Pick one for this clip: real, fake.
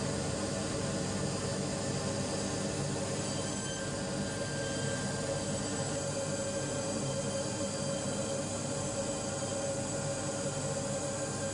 real